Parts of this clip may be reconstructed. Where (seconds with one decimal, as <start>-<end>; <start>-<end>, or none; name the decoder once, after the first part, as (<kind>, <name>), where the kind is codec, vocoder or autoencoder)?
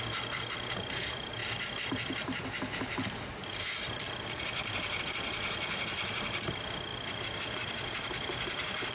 none